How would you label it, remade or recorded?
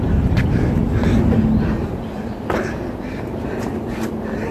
recorded